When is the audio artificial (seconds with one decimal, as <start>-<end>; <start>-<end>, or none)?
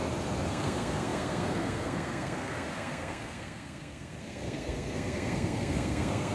0.5-6.3